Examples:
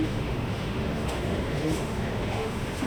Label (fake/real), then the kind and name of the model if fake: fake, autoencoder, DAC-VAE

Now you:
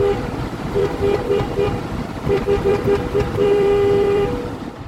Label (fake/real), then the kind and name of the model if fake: fake, vocoder, BigVGAN v2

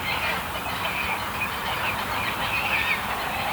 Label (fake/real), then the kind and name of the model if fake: real